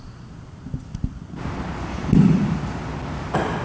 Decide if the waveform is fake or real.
real